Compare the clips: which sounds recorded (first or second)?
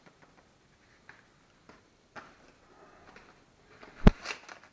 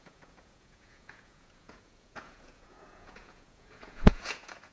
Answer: first